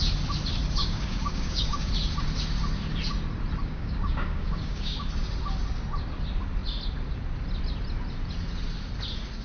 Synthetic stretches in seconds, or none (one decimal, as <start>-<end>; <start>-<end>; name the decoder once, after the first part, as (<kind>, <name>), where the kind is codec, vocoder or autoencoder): 0.8-1.9 (codec, DAC); 3.6-5.1